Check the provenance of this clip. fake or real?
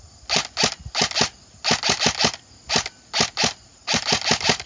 real